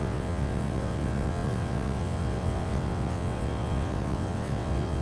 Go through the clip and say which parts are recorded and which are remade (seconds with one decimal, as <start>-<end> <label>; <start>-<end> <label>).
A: 0.0-5.0 remade